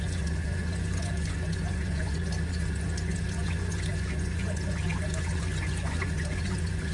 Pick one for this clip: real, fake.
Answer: fake